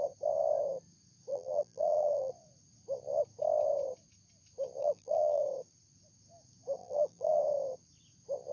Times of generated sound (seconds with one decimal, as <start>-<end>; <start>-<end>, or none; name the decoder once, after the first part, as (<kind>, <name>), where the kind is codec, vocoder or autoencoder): 1.3-2.3 (vocoder, BigVGAN v2); 4.8-5.4; 6.8-7.4

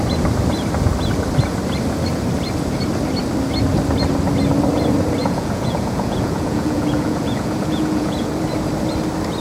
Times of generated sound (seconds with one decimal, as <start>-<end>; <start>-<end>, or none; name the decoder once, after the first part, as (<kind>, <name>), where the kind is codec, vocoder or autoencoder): 5.2-8.4 (vocoder, Vocos)

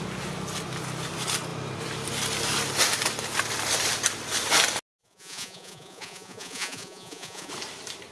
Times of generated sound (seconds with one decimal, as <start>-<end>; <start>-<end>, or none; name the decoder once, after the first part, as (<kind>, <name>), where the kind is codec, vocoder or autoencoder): 5.0-7.5 (vocoder, Vocos)

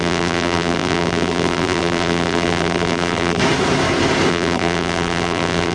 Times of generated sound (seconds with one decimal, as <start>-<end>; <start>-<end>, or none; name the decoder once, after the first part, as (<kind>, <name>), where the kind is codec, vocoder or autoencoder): 0.0-3.4 (vocoder, BigVGAN v2); 4.3-5.7

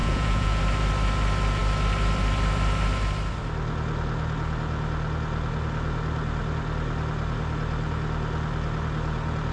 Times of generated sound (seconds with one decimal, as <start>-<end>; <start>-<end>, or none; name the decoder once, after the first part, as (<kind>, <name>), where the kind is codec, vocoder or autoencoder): 0.0-0.6 (vocoder, Vocos)